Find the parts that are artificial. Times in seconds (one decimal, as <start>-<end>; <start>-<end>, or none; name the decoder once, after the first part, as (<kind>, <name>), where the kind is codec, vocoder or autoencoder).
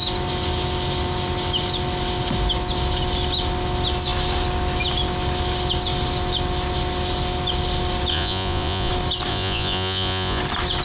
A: 8.1-8.9 (vocoder, Vocos); 9.3-10.4